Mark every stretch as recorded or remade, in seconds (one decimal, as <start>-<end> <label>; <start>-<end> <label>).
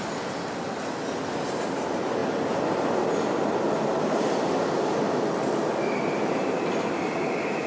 0.0-7.7 recorded